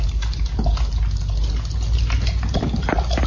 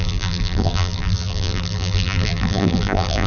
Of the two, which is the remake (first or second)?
second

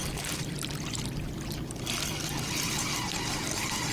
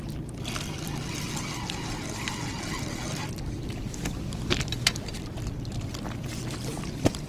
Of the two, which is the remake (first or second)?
first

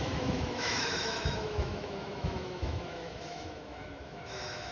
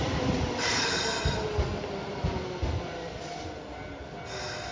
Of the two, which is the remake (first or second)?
first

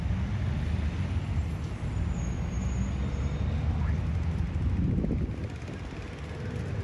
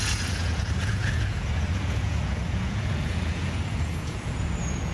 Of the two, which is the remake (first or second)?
second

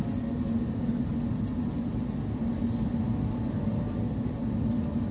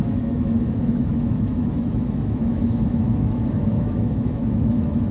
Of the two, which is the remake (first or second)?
second